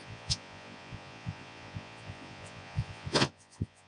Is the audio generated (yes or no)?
yes